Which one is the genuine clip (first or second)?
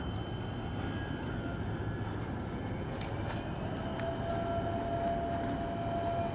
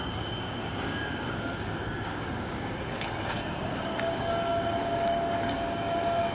first